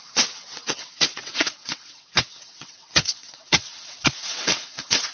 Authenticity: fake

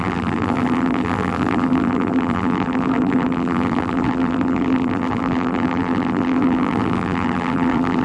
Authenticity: fake